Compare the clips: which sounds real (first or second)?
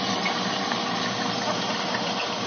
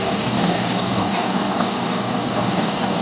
first